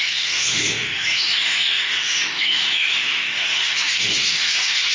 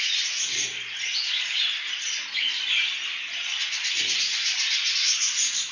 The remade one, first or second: first